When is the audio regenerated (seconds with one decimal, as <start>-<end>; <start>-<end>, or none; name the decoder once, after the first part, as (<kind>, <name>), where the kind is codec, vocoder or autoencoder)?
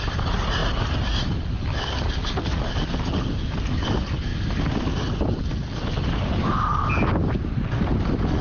none